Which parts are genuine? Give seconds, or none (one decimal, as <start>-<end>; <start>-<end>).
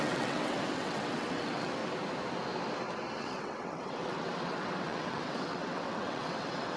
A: 1.8-3.2